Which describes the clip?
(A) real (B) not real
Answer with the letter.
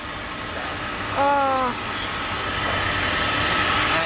A